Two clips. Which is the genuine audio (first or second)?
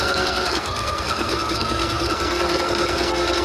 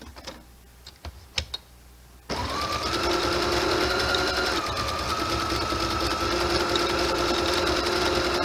second